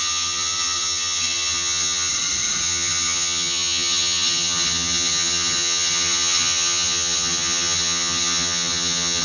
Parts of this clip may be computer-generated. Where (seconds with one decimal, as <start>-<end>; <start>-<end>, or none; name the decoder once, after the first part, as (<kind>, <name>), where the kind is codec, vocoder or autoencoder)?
0.0-2.1 (vocoder, HiFi-GAN); 2.6-9.2